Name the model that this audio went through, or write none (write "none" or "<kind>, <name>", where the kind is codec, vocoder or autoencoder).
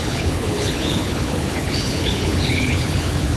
codec, HILCodec